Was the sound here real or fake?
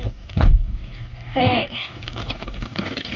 fake